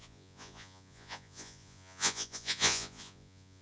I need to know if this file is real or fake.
fake